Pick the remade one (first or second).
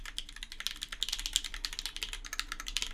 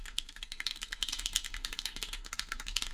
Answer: second